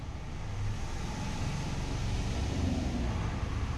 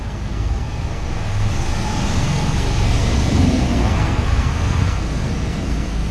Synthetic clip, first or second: second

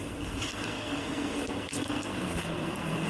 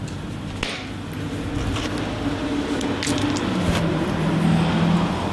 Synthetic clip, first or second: first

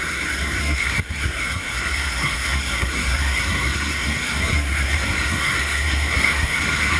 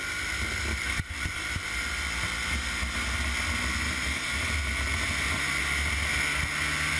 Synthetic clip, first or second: first